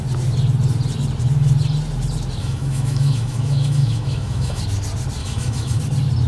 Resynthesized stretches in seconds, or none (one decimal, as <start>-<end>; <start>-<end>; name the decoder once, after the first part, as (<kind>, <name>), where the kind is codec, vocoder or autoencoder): 2.4-4.6 (autoencoder, DAC-VAE); 5.2-5.8